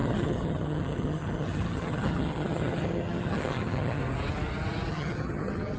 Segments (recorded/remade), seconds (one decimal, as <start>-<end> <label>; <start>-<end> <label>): 0.0-4.0 remade; 4.0-4.9 recorded; 4.9-5.8 remade